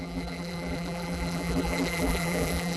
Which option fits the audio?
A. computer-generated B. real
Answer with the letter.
A